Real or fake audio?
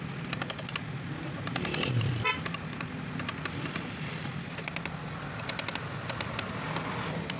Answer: real